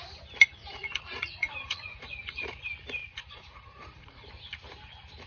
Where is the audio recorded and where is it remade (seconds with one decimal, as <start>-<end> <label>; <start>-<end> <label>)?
0.0-0.6 recorded; 0.6-2.6 remade; 2.6-3.0 recorded; 3.0-4.3 remade; 4.3-5.3 recorded